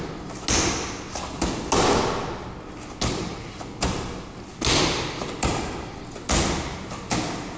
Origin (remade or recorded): recorded